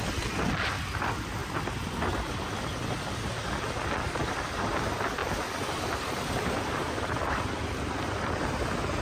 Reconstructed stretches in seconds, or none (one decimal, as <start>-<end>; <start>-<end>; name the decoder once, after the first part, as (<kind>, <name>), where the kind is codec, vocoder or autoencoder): none